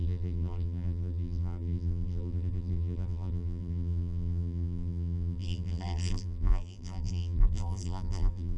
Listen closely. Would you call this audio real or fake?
fake